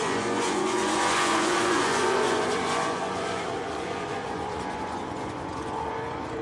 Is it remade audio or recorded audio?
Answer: remade